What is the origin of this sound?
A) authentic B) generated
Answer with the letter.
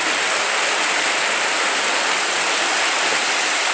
A